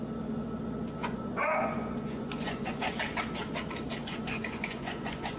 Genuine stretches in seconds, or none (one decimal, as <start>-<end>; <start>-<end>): 0.0-1.0; 2.8-4.0